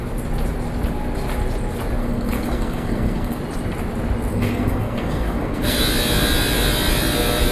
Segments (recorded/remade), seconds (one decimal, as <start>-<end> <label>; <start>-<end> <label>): 0.0-2.0 recorded; 2.0-3.4 remade; 3.4-4.3 recorded; 4.3-5.8 remade; 5.8-7.5 recorded